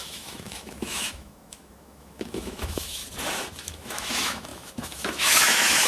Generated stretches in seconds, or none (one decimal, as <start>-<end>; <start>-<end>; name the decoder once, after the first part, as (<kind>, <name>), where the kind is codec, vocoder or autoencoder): 0.0-3.0 (autoencoder, DAC-VAE); 3.6-5.9